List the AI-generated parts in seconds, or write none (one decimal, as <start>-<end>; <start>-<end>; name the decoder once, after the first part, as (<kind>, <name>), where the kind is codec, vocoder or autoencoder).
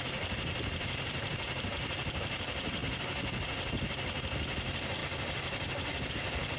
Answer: 0.0-2.8 (vocoder, BigVGAN v2); 3.7-5.0; 6.1-6.6